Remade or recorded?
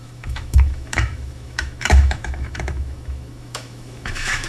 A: remade